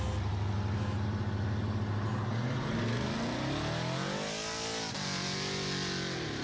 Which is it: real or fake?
real